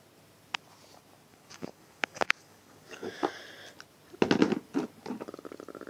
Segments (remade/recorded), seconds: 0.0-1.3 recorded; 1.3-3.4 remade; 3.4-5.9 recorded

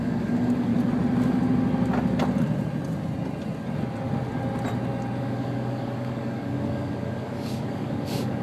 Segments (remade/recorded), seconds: 0.0-0.7 remade; 0.7-5.2 recorded; 5.2-8.4 remade